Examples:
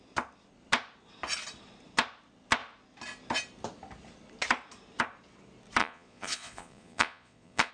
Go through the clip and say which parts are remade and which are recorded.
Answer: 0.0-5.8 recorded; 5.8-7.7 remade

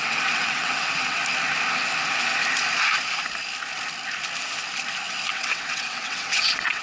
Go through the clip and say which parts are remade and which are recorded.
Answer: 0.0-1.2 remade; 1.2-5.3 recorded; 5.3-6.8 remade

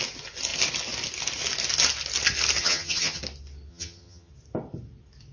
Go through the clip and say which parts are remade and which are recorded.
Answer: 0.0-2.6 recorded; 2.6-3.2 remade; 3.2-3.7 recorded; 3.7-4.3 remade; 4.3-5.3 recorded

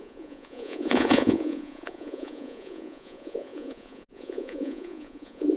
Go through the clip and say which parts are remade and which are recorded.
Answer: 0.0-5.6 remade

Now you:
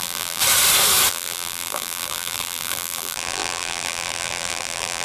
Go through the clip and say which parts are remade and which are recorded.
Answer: 0.0-0.4 remade; 0.4-1.1 recorded; 1.1-5.0 remade